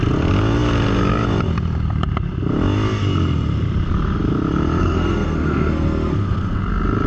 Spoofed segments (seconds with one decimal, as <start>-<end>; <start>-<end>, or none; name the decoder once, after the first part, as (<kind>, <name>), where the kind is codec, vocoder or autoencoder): 4.8-6.6 (codec, SNAC)

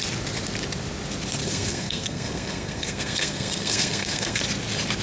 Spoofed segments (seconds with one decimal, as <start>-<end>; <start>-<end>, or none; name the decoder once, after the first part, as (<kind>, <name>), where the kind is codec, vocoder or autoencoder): 1.4-4.4 (codec, SNAC)

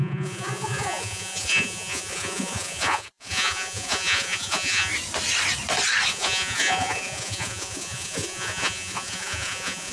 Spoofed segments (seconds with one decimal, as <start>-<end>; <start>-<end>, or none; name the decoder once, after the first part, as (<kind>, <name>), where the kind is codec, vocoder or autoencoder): 0.0-4.9 (vocoder, Vocos); 6.1-9.9

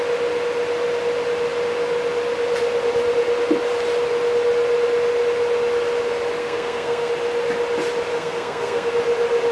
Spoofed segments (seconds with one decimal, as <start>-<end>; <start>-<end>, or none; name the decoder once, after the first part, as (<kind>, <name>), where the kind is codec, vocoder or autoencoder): 6.4-7.1 (codec, SNAC); 8.1-8.9